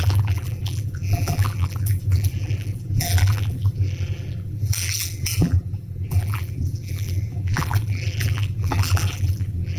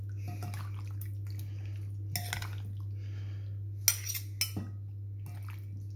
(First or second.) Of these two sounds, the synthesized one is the first